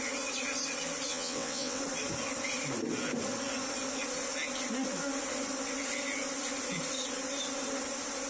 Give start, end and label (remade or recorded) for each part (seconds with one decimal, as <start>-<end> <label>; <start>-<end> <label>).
0.0-1.1 recorded; 1.1-1.8 remade; 1.8-8.3 recorded